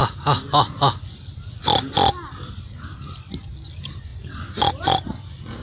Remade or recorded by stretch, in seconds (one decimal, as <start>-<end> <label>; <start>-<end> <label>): 0.0-5.6 recorded